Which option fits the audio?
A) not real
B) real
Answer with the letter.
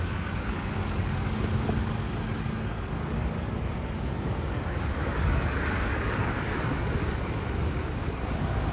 A